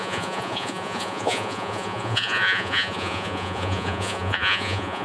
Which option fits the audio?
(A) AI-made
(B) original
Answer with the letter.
A